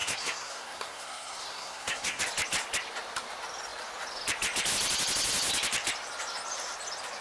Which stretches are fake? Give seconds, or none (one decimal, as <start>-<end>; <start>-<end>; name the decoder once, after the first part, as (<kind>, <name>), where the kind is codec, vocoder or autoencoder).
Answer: 0.0-2.2 (codec, SNAC)